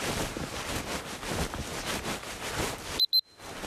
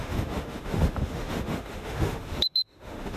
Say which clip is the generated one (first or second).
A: second